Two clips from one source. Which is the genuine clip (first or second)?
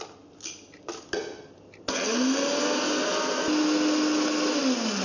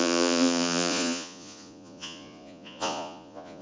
first